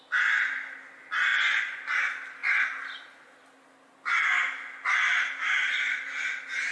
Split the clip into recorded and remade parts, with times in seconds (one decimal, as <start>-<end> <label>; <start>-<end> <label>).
0.0-1.3 recorded; 1.3-1.8 remade; 1.8-6.7 recorded